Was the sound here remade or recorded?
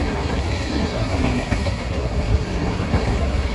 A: remade